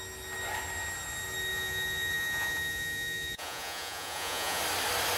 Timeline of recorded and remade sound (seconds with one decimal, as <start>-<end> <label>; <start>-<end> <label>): 0.0-1.5 recorded; 1.5-4.6 remade; 4.6-5.2 recorded